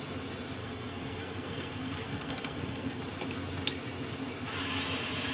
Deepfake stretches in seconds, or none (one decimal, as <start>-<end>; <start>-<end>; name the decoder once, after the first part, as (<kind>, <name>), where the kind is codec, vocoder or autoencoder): 0.6-3.0 (codec, SNAC)